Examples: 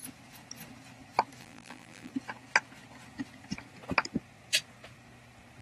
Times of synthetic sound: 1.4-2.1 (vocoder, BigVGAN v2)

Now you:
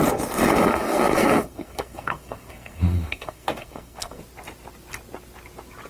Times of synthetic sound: 0.7-4.2 (codec, SNAC)

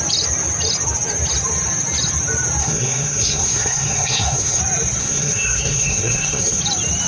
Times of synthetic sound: 2.6-4.6 (codec, SNAC); 5.0-6.6

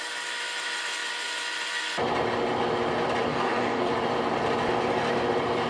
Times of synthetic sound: 3.3-3.9 (codec, DAC)

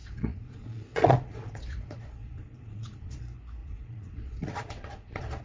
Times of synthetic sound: 0.0-3.2 (vocoder, Vocos); 3.6-5.4

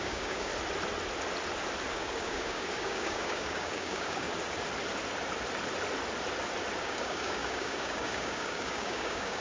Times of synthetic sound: 0.0-0.5 (codec, DAC); 1.9-4.3; 6.8-9.4

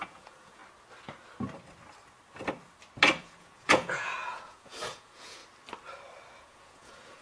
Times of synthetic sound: 0.0-0.6 (vocoder, Vocos); 3.2-5.4; 6.4-7.2